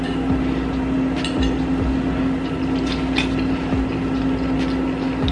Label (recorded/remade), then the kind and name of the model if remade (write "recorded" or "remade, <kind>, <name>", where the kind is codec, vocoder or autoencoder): recorded